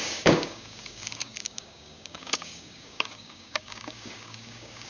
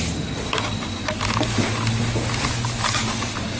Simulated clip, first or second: first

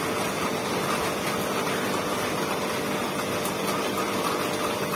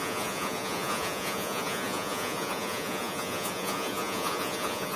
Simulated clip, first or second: second